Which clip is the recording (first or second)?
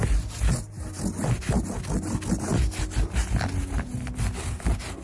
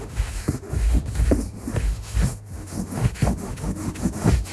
first